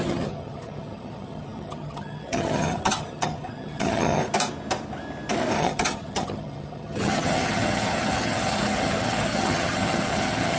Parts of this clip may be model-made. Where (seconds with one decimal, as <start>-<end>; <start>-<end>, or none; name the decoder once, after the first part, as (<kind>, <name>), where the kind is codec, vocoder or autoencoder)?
0.0-4.2 (vocoder, HiFi-GAN); 5.6-10.6